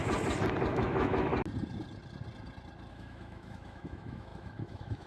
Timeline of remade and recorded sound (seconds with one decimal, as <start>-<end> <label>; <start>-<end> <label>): 0.0-0.7 recorded; 0.7-1.3 remade; 1.3-2.9 recorded; 2.9-5.1 remade